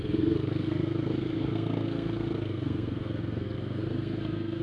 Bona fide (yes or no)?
no